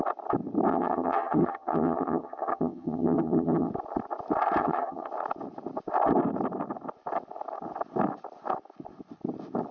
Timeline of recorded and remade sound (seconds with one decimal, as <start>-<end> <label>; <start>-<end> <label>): 0.0-0.7 recorded; 0.7-3.7 remade; 3.7-4.6 recorded; 4.6-5.1 remade; 5.1-9.7 recorded